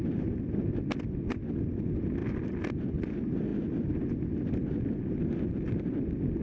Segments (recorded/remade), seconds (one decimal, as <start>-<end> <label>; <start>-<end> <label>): 0.0-6.4 recorded